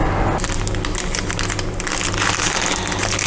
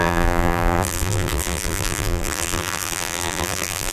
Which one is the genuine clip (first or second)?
first